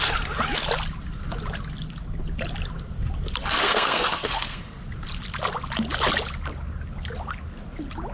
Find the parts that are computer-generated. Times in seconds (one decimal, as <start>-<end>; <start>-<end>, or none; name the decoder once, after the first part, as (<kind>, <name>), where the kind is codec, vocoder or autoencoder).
3.4-4.8 (codec, SNAC)